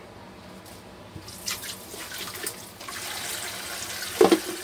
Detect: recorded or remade recorded